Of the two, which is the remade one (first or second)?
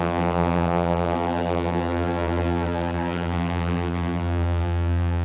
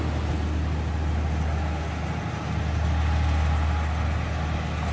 first